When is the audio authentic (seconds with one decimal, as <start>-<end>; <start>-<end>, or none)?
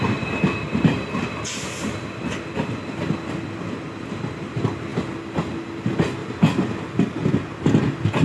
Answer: 0.0-8.2